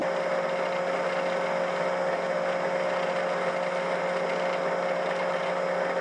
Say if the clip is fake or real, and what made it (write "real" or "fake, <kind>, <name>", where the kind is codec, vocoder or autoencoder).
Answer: real